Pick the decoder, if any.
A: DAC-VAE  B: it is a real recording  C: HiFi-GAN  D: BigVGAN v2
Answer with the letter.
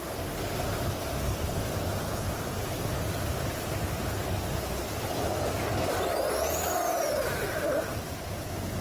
B